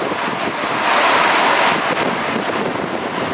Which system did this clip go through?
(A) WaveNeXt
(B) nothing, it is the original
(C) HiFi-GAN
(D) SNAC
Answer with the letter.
B